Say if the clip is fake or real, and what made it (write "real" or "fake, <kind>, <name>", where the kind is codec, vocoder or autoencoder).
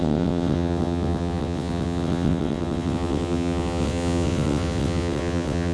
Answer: fake, vocoder, WaveNeXt